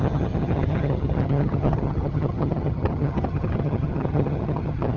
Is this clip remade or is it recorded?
remade